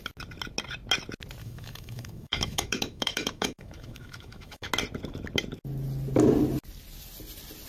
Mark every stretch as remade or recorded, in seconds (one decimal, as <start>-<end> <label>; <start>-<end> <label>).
0.0-1.4 recorded; 1.4-4.7 remade; 4.7-7.7 recorded